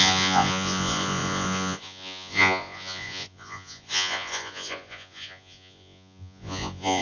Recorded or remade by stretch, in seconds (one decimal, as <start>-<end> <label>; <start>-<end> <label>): 0.0-7.0 remade